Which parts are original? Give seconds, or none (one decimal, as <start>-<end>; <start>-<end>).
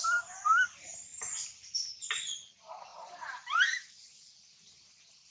0.0-2.9; 4.2-5.3